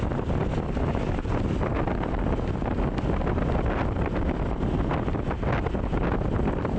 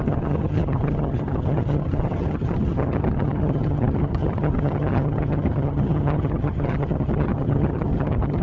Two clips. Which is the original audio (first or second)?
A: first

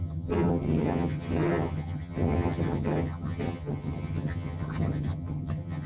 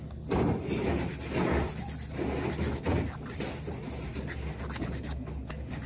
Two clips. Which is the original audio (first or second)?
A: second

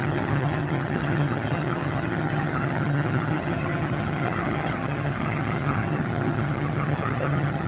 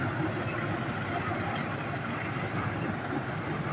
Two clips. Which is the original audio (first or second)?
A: second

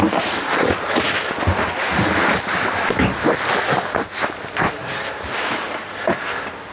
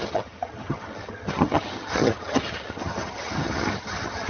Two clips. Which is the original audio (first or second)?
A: first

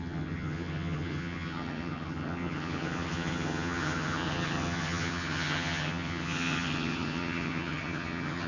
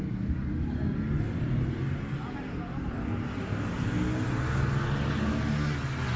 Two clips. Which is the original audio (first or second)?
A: second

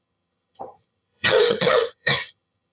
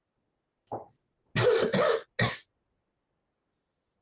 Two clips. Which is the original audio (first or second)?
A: second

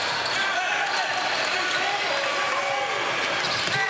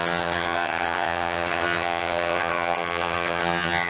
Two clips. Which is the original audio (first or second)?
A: first